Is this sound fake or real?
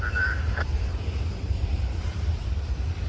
fake